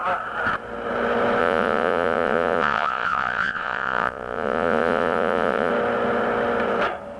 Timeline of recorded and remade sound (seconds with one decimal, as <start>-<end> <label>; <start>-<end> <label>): 0.0-1.4 recorded; 1.4-5.7 remade; 5.7-7.2 recorded